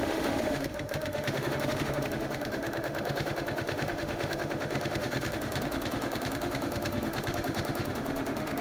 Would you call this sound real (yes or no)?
no